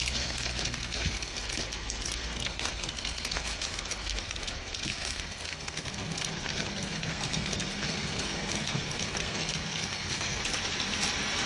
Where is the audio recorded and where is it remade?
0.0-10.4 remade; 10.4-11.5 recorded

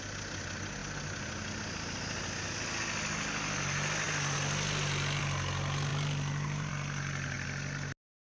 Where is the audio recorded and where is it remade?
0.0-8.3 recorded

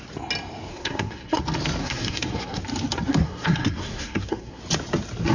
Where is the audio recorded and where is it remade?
0.0-0.7 recorded; 0.7-1.4 remade; 1.4-1.8 recorded; 1.8-2.6 remade; 2.6-3.1 recorded; 3.1-4.6 remade; 4.6-5.3 recorded

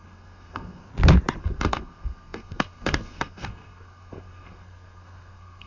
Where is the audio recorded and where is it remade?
0.0-0.9 remade; 0.9-1.4 recorded; 1.4-5.7 remade

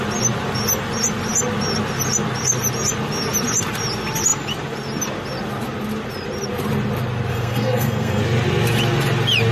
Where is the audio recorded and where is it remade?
0.0-7.3 recorded; 7.3-8.2 remade; 8.2-9.5 recorded